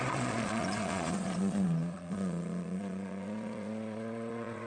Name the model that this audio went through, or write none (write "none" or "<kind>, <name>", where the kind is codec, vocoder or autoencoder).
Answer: vocoder, Vocos